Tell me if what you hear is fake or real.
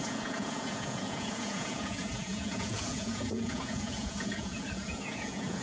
fake